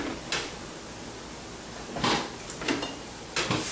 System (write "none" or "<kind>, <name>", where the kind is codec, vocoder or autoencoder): none